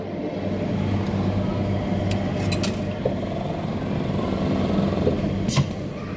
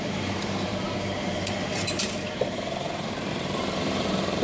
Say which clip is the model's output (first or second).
second